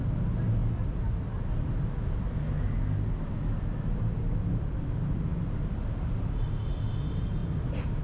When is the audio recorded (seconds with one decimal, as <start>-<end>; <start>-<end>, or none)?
0.0-8.0